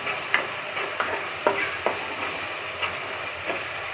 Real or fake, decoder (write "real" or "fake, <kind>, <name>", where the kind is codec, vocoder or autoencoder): real